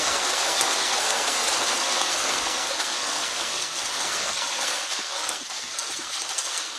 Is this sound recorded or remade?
remade